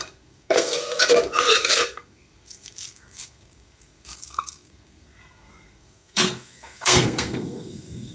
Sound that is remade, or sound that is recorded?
remade